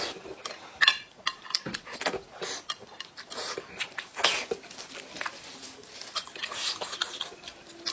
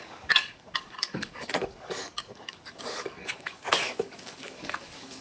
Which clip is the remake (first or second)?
second